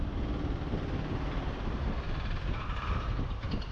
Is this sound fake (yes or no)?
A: no